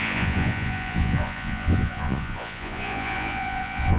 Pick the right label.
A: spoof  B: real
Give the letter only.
A